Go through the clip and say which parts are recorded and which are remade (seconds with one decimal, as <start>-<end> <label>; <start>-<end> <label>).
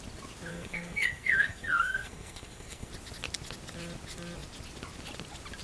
0.0-0.5 recorded; 0.5-2.9 remade; 2.9-5.6 recorded